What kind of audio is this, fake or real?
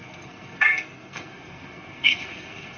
fake